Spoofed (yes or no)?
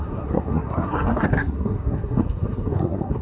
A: yes